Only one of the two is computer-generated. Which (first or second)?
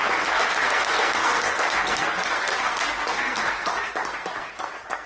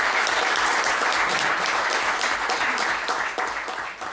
first